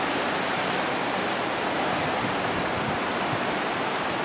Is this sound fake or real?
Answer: real